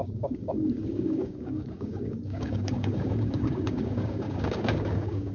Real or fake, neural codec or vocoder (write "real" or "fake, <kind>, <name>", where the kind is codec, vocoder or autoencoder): fake, codec, DAC